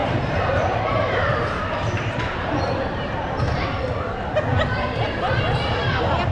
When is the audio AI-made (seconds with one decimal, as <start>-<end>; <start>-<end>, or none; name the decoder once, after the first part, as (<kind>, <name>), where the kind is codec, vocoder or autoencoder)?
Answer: 0.0-3.1 (vocoder, BigVGAN v2)